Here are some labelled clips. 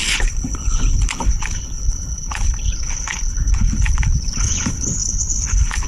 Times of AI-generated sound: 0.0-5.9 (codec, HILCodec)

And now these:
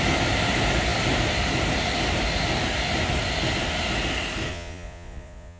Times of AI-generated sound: 4.5-5.6 (vocoder, Vocos)

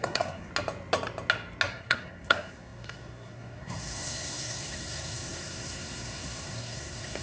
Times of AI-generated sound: 0.0-0.5 (codec, SNAC); 1.7-7.2

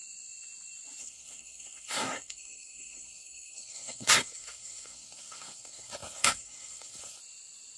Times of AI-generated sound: 1.0-7.2 (codec, SNAC)